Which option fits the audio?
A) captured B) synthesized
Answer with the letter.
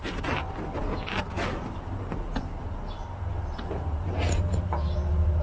A